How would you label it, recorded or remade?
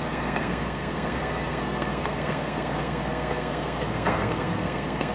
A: remade